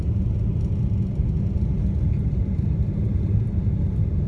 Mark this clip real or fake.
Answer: real